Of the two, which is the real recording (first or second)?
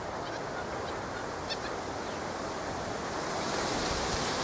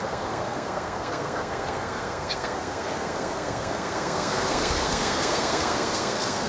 first